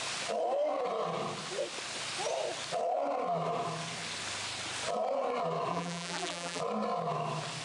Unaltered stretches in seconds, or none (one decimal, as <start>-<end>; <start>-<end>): 0.0-5.7; 6.6-7.6

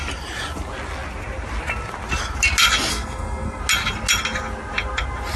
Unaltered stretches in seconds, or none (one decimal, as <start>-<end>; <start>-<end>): 0.0-2.9; 3.6-5.4

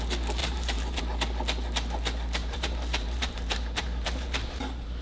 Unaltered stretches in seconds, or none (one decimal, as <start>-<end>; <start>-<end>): 0.0-0.4; 1.0-2.4

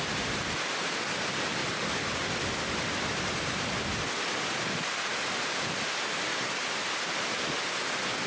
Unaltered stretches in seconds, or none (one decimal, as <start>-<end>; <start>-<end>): 0.0-1.6; 5.9-8.3

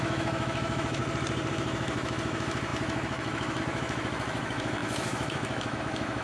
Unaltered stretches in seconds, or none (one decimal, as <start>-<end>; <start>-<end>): 1.0-1.5

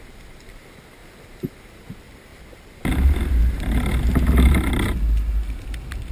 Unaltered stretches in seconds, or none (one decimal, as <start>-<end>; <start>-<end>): 0.0-1.0; 1.6-6.1